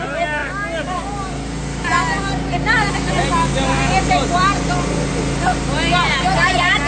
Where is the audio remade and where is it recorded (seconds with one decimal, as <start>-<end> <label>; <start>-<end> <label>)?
0.0-6.9 recorded